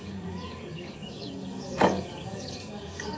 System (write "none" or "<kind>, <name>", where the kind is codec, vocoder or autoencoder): codec, DAC